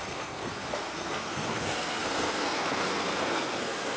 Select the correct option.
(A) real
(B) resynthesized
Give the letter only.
B